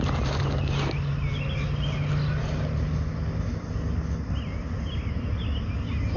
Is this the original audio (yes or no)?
yes